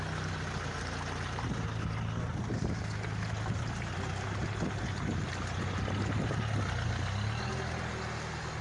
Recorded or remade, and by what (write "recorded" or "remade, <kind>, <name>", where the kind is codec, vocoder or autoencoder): recorded